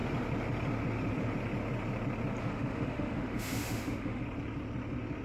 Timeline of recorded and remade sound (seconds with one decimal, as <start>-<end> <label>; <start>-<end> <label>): 0.0-2.4 recorded; 2.4-4.2 remade; 4.2-5.2 recorded